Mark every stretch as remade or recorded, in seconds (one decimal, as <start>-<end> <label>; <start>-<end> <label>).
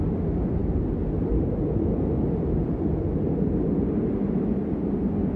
0.0-5.4 recorded